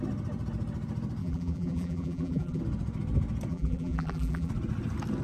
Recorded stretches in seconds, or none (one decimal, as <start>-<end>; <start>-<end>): 0.0-1.2; 2.6-3.5; 4.5-5.2